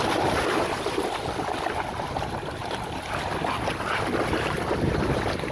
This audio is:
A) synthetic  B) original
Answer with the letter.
B